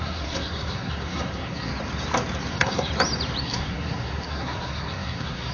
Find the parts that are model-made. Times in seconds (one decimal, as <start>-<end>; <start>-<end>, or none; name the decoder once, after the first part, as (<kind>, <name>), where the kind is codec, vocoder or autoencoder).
0.0-1.7 (codec, SNAC); 2.5-2.9; 3.4-5.5

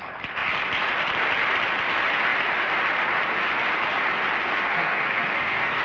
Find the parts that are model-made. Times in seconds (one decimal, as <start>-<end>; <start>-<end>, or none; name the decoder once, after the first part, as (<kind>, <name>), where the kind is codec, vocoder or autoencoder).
4.4-5.8 (codec, SNAC)

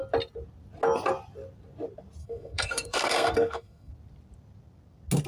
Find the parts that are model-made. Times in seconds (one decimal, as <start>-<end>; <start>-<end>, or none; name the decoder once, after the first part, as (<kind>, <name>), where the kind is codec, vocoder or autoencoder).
2.2-3.9 (codec, SNAC)